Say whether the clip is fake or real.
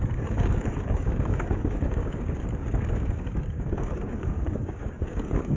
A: fake